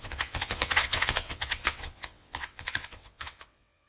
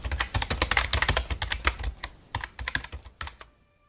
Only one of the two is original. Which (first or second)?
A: second